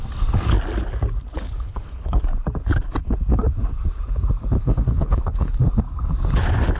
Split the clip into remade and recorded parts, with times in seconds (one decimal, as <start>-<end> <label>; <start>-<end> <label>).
0.0-1.3 recorded; 1.3-2.2 remade; 2.2-4.6 recorded; 4.6-5.6 remade; 5.6-6.8 recorded